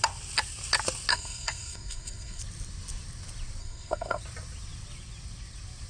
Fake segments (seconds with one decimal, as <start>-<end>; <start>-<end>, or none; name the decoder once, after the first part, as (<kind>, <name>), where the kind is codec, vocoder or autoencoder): 1.1-2.4 (codec, SNAC); 3.6-4.2